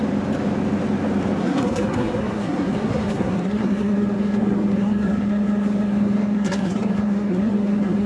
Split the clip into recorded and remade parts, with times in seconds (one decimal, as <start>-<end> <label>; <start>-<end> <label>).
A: 0.0-1.4 recorded; 1.4-8.1 remade